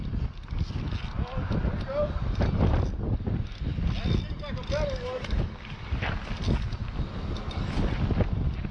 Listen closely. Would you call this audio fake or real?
real